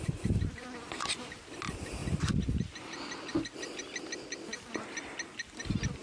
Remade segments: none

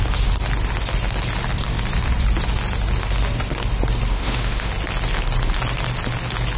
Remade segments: 4.1-4.7 (autoencoder, DAC-VAE)

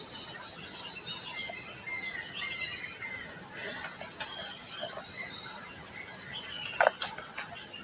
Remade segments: none

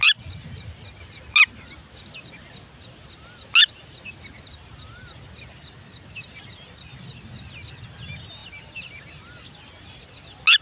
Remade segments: none

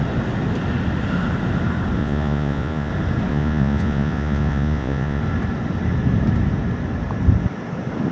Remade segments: 2.0-2.9 (vocoder, Vocos); 3.3-5.2

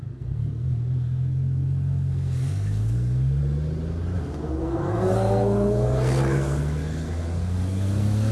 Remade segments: 0.0-3.4 (codec, SNAC); 4.2-8.3

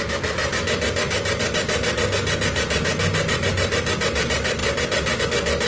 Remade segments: none

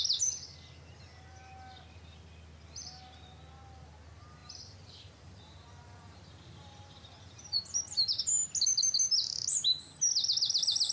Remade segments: 4.4-8.2 (vocoder, BigVGAN v2)